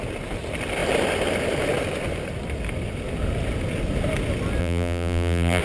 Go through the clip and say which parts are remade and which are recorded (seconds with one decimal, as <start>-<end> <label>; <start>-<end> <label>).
0.0-4.6 recorded; 4.6-5.6 remade